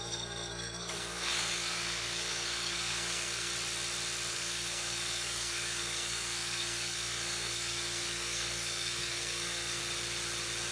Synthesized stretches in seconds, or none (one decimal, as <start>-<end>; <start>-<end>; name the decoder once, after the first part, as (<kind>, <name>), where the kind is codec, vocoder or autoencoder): 0.0-3.5 (codec, SNAC); 4.3-9.8